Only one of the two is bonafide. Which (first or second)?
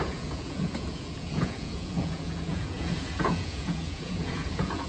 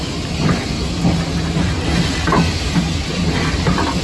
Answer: second